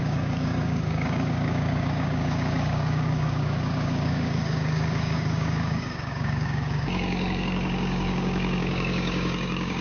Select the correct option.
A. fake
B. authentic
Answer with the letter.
A